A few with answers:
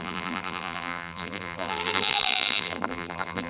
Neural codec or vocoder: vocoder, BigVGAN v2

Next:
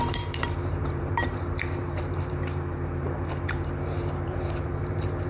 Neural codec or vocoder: vocoder, BigVGAN v2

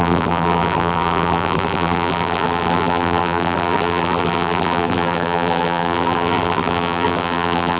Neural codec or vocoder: vocoder, BigVGAN v2